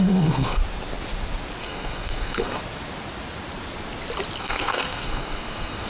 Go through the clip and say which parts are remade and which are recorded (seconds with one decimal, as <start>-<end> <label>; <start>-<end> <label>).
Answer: 0.0-0.6 remade; 0.6-1.6 recorded; 1.6-2.6 remade; 2.6-4.4 recorded; 4.4-5.9 remade